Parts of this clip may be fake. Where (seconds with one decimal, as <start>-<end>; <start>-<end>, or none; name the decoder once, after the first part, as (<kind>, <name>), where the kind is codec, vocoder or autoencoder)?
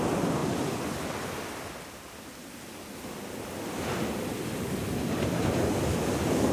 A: none